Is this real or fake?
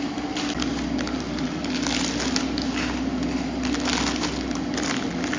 real